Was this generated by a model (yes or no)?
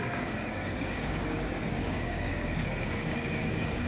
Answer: yes